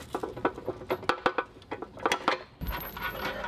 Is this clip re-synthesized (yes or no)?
no